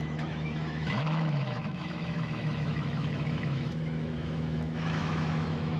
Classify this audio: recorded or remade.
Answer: remade